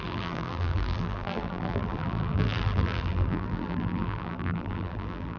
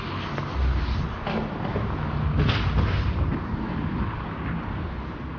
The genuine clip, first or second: second